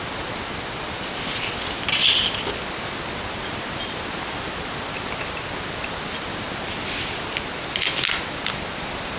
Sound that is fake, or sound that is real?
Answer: real